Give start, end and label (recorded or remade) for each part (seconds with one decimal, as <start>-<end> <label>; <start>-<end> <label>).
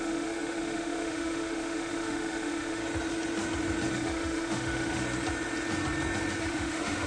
0.0-2.8 remade; 2.8-3.9 recorded; 3.9-5.0 remade; 5.0-6.4 recorded; 6.4-7.1 remade